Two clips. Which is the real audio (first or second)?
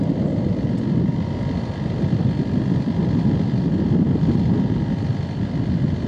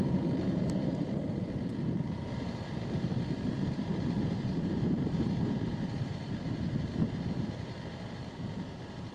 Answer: first